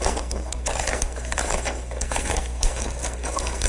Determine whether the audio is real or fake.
fake